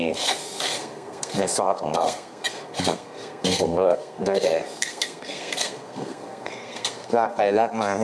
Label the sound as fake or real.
fake